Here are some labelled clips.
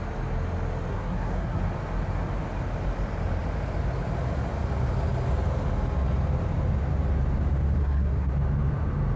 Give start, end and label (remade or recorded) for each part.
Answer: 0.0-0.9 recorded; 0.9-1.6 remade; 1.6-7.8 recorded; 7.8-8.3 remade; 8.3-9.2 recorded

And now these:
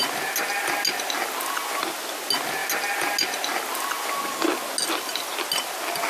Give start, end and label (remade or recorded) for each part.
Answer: 0.0-6.1 recorded

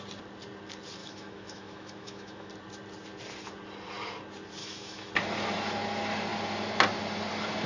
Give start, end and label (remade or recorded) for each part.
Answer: 0.0-1.0 recorded; 1.0-2.5 remade; 2.5-4.6 recorded; 4.6-5.1 remade; 5.1-7.7 recorded

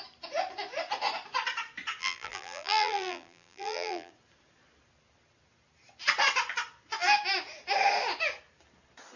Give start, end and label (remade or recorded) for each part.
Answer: 0.0-2.0 recorded; 2.0-4.1 remade; 4.1-9.2 recorded